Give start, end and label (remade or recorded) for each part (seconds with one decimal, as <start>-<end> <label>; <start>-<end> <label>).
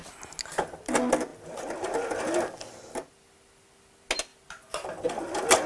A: 0.0-5.7 recorded